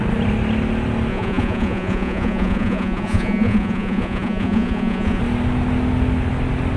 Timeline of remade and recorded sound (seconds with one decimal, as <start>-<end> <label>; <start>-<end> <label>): 0.0-1.1 recorded; 1.1-5.2 remade; 5.2-6.8 recorded